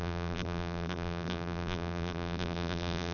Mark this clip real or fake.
fake